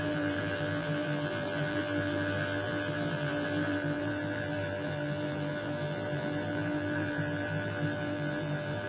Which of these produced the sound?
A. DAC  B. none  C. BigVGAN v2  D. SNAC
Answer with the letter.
C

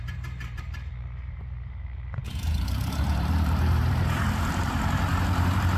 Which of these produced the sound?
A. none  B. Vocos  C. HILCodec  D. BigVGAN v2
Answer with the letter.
D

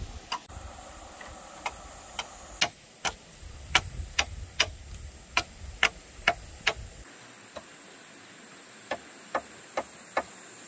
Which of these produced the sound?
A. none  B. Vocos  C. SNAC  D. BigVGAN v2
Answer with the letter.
A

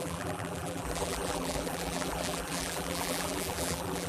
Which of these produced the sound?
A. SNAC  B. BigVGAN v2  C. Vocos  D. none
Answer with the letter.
B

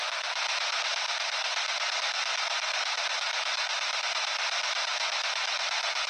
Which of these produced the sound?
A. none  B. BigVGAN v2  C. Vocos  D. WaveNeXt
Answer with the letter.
A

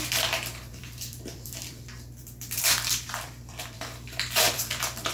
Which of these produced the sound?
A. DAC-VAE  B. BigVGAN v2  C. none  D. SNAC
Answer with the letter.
B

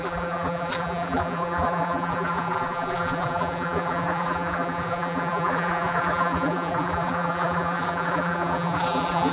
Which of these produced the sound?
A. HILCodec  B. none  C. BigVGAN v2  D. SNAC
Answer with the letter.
C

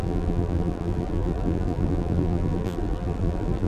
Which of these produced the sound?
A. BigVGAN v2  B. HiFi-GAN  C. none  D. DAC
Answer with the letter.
A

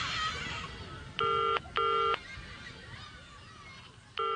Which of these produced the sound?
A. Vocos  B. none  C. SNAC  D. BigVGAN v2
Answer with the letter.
B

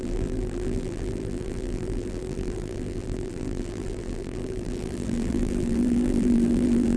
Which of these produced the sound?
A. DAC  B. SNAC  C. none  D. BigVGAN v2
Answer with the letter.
D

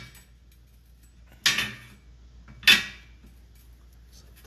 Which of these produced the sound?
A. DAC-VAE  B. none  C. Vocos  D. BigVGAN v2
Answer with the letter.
B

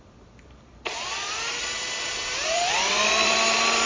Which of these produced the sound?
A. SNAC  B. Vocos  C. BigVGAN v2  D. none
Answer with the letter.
C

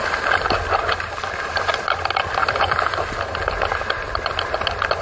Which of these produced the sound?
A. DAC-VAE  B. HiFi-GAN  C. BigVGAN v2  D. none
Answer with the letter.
D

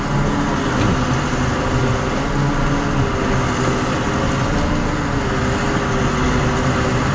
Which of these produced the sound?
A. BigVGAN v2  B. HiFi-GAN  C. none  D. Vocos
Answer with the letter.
C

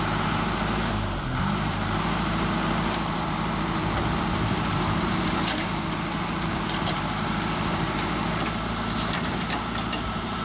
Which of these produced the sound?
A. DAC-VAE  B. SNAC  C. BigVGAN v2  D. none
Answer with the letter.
C